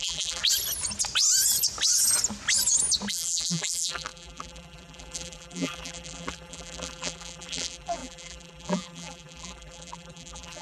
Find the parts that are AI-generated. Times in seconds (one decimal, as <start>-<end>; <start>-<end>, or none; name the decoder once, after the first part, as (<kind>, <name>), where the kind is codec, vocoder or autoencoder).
0.0-0.4 (vocoder, BigVGAN v2); 3.1-10.6